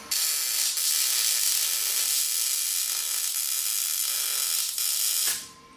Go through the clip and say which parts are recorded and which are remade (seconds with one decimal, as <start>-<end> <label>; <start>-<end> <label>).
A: 0.0-5.2 recorded; 5.2-5.8 remade